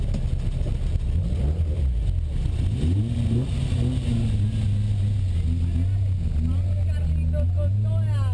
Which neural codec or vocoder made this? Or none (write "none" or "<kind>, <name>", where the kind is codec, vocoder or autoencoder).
none